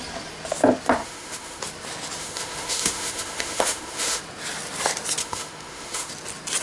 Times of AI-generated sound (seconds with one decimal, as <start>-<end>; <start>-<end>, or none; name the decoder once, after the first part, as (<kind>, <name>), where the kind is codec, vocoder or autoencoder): 1.0-1.6 (autoencoder, DAC-VAE); 2.2-4.2; 5.2-6.1